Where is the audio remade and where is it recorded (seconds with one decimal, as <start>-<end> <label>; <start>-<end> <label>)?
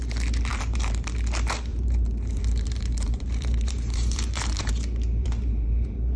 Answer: 0.0-0.5 recorded; 0.5-1.1 remade; 1.1-1.7 recorded; 1.7-4.7 remade; 4.7-5.2 recorded; 5.2-6.2 remade